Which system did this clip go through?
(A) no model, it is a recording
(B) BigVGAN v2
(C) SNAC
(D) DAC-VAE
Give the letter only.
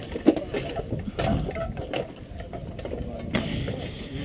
A